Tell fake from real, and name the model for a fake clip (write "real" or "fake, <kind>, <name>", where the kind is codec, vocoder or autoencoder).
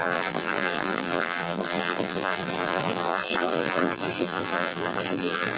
fake, vocoder, BigVGAN v2